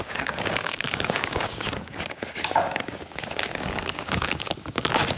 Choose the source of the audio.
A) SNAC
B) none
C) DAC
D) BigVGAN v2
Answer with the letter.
C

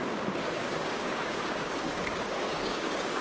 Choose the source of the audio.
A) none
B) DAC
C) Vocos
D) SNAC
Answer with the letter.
B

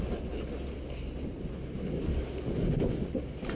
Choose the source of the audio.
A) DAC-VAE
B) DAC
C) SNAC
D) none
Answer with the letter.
D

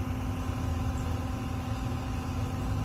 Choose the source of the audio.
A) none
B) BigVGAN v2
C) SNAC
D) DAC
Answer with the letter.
A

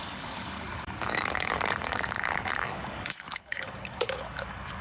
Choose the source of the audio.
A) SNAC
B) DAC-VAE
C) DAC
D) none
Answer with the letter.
C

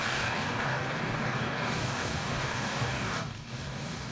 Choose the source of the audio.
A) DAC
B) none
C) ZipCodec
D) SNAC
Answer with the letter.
A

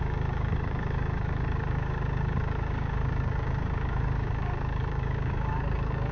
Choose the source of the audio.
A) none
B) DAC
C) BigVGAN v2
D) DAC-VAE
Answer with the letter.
B